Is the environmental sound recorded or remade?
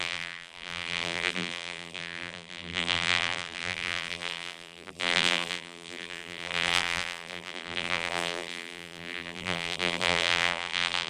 remade